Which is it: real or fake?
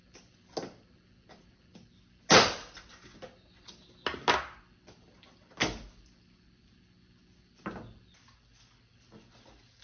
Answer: real